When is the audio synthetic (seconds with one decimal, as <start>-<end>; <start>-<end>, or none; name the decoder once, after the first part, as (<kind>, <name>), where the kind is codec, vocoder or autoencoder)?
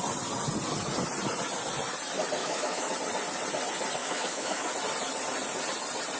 2.4-2.9 (autoencoder, DAC-VAE); 4.0-4.7